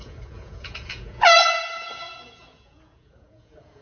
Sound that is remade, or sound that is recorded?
remade